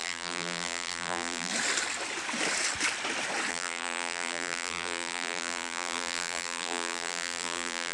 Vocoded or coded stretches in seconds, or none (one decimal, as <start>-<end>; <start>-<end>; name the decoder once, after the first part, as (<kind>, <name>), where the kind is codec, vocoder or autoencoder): 0.0-1.5 (vocoder, BigVGAN v2); 3.5-7.9